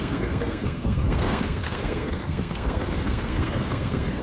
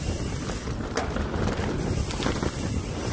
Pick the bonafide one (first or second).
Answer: second